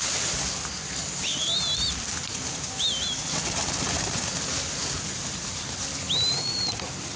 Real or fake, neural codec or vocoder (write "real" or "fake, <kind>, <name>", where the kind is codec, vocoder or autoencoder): real